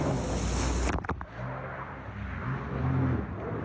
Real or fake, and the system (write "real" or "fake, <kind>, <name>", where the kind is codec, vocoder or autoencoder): real